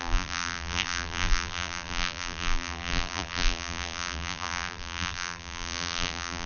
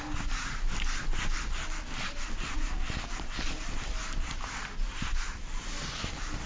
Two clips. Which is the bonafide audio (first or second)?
second